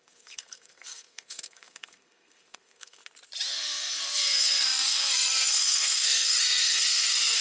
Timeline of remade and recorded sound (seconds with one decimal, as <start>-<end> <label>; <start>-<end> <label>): 0.0-3.0 remade; 3.0-3.5 recorded; 3.5-7.4 remade